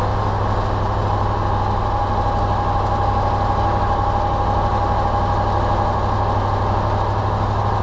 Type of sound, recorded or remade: recorded